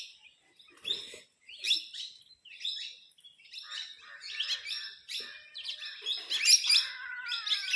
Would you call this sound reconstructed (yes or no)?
no